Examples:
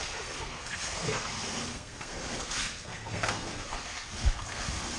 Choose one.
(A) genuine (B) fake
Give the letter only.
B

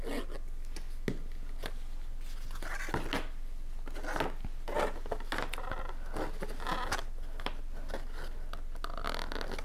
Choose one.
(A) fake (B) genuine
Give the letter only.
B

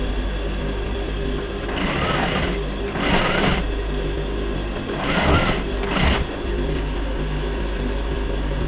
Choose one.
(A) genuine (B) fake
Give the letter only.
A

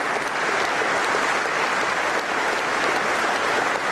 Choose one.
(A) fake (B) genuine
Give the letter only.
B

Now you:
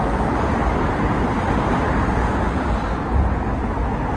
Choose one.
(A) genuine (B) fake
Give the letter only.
A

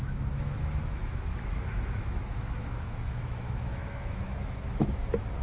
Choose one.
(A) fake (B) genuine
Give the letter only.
A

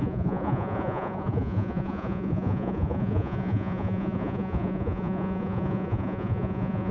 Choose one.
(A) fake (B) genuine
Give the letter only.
A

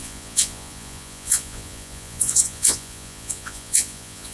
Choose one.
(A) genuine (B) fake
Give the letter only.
B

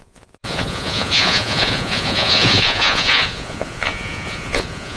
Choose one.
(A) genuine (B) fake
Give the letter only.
B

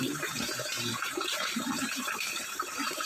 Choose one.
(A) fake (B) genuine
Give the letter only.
A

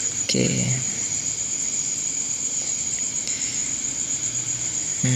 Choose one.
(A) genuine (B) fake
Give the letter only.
B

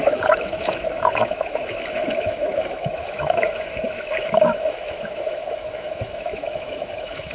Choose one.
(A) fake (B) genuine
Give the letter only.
A